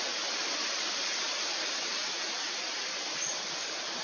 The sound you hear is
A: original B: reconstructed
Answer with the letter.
A